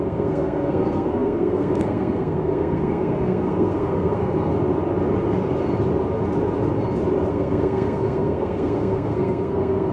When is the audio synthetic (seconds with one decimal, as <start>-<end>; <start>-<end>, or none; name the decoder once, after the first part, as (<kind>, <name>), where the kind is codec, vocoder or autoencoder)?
0.0-4.5 (codec, SNAC); 7.3-9.9